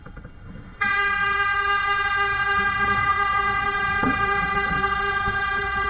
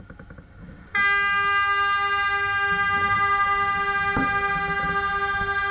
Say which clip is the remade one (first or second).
first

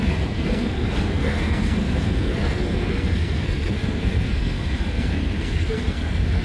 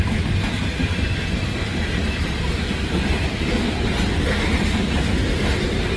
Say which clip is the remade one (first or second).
first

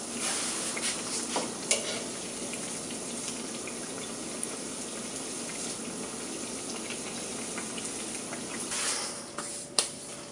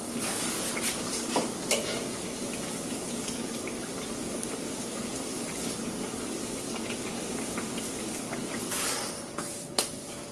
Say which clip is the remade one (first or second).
second